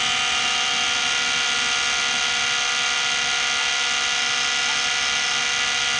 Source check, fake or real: real